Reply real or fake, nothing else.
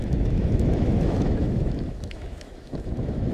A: fake